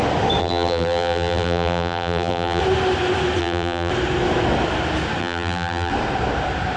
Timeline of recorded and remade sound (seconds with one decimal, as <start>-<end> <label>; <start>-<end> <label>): 0.0-0.4 recorded; 0.4-2.6 remade; 2.6-3.4 recorded; 3.4-3.9 remade; 3.9-5.2 recorded; 5.2-5.9 remade; 5.9-6.8 recorded